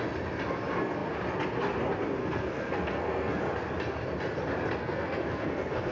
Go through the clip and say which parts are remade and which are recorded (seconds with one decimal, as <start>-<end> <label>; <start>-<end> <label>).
0.0-2.2 recorded; 2.2-3.4 remade; 3.4-4.8 recorded; 4.8-5.9 remade